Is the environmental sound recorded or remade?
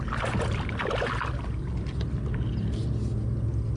recorded